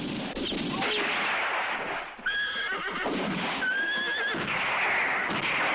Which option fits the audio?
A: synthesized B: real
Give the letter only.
B